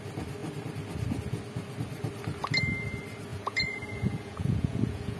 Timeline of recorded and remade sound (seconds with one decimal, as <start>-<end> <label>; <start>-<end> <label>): 0.0-3.3 recorded; 3.3-5.2 remade